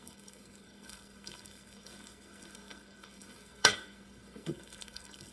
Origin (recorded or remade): remade